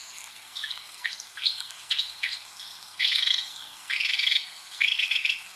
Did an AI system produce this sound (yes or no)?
yes